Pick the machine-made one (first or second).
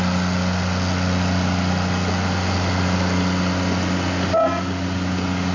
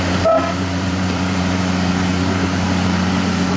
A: second